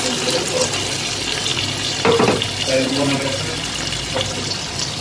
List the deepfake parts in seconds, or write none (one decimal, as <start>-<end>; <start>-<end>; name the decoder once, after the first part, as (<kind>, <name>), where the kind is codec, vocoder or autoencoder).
1.5-2.3 (vocoder, BigVGAN v2)